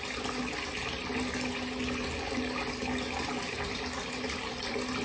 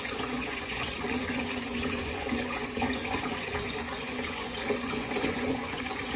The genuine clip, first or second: first